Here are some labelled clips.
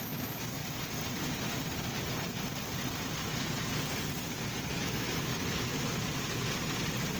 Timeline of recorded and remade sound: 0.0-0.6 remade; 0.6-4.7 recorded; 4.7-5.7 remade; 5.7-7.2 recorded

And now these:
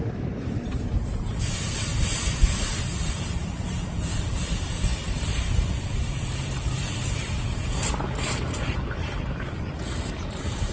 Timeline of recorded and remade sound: 0.0-1.9 remade; 1.9-2.4 recorded; 2.4-10.7 remade

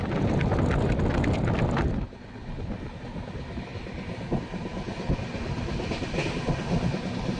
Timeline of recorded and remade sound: 0.0-7.4 recorded

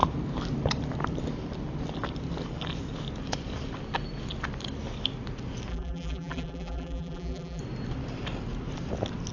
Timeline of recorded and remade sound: 0.0-5.7 recorded; 5.7-7.6 remade; 7.6-9.3 recorded

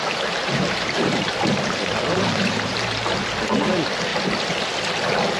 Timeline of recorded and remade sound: 0.0-3.2 remade; 3.2-5.4 recorded

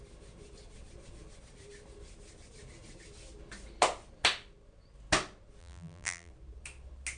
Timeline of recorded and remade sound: 0.0-5.6 recorded; 5.6-6.3 remade; 6.3-7.2 recorded

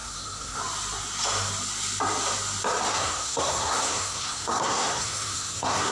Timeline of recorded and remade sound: 0.0-0.6 remade; 0.6-2.9 recorded; 2.9-5.9 remade

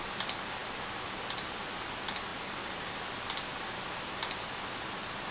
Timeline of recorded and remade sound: 0.0-5.3 recorded